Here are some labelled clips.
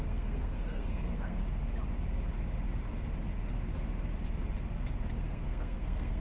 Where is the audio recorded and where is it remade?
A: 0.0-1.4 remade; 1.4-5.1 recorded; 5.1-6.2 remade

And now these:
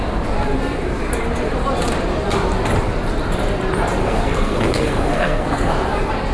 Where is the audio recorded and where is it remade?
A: 0.0-4.0 recorded; 4.0-5.7 remade; 5.7-6.3 recorded

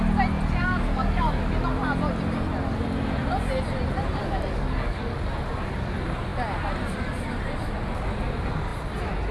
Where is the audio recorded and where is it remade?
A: 0.0-0.6 recorded; 0.6-1.4 remade; 1.4-4.2 recorded; 4.2-5.0 remade; 5.0-9.3 recorded

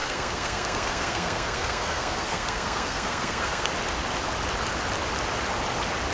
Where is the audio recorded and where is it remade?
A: 0.0-3.7 remade; 3.7-6.1 recorded

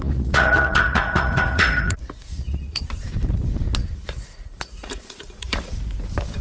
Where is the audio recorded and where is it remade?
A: 0.0-2.8 remade; 2.8-3.8 recorded; 3.8-5.7 remade; 5.7-6.4 recorded

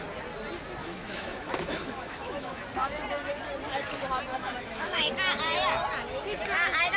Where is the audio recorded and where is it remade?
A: 0.0-0.8 recorded; 0.8-2.6 remade; 2.6-4.3 recorded; 4.3-5.1 remade; 5.1-7.0 recorded

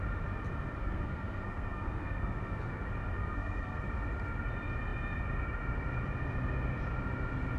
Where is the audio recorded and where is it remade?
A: 0.0-0.8 recorded; 0.8-2.8 remade; 2.8-3.2 recorded; 3.2-3.8 remade; 3.8-7.6 recorded

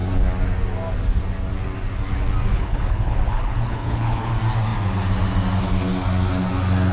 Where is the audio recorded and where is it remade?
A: 0.0-2.5 recorded; 2.5-4.3 remade; 4.3-6.9 recorded